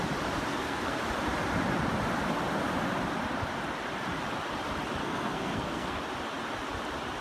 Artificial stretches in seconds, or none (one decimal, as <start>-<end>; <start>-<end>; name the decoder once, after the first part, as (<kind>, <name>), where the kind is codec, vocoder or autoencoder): 0.5-1.0 (codec, SNAC); 5.0-6.0